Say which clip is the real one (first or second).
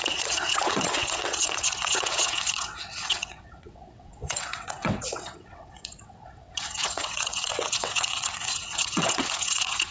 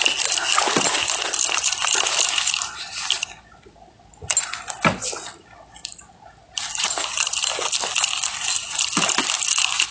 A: second